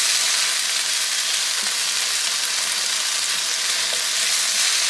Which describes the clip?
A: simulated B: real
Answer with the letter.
B